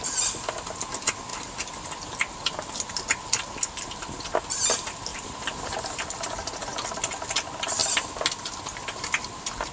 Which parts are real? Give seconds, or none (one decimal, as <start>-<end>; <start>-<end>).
0.0-5.1; 5.6-9.7